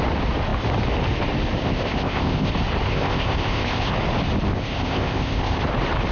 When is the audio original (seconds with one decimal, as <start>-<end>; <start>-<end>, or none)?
0.0-1.6; 2.5-2.9; 3.9-4.5; 5.6-6.1

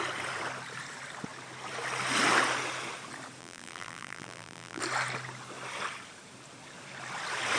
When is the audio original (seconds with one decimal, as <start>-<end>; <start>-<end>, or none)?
0.0-3.4; 4.8-7.6

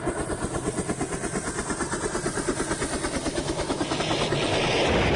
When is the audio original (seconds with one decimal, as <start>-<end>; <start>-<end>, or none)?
0.0-3.3; 3.8-5.2

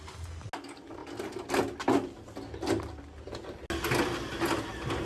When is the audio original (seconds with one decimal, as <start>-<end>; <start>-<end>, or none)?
0.0-5.0

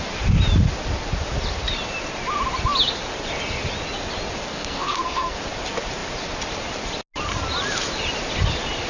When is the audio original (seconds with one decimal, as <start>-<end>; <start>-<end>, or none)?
0.0-4.4; 5.4-8.9

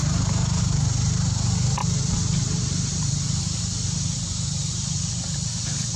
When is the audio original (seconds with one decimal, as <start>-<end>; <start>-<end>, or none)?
0.0-1.8; 4.7-6.0